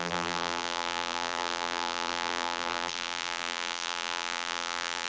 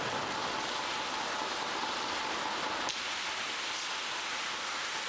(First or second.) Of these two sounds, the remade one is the first